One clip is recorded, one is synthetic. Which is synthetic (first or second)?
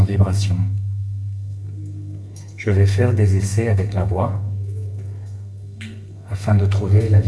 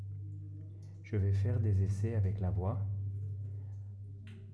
first